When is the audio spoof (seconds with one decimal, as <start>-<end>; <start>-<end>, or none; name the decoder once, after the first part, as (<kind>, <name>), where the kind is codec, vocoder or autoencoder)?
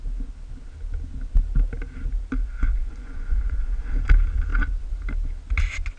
2.4-3.8 (vocoder, Vocos)